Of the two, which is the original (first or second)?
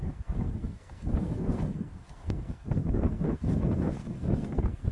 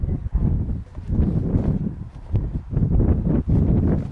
second